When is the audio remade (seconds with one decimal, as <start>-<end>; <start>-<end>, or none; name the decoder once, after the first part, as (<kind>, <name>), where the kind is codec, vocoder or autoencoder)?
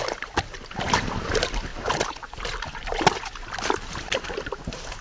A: none